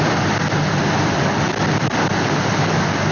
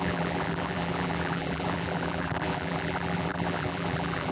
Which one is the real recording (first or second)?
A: first